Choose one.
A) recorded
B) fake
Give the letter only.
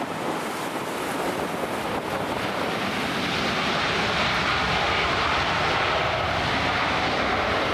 A